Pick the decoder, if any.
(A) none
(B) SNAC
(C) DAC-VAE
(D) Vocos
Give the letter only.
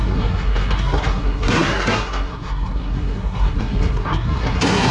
B